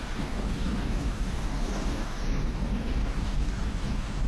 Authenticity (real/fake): fake